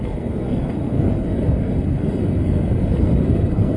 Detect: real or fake fake